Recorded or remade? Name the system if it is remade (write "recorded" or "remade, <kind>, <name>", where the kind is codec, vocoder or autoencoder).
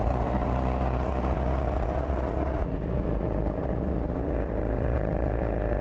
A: remade, vocoder, Vocos